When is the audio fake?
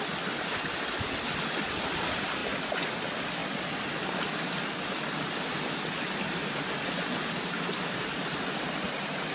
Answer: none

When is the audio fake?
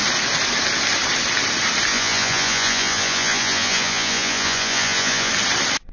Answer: 1.9-5.3 (vocoder, Vocos)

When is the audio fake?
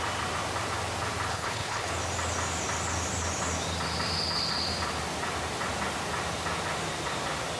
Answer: 1.3-1.9 (codec, HILCodec)